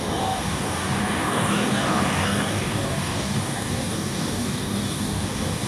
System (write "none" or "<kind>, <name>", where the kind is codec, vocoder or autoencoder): codec, DAC